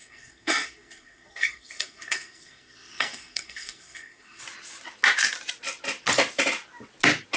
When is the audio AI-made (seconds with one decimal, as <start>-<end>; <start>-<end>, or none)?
0.0-4.4